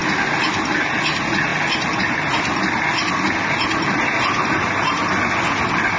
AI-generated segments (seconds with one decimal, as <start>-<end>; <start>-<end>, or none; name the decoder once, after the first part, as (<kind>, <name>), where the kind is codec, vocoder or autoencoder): none